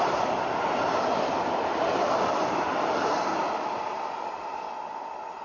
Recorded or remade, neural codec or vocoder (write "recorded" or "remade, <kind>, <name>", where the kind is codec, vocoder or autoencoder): recorded